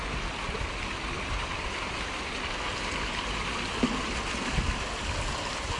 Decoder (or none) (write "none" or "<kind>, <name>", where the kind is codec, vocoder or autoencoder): none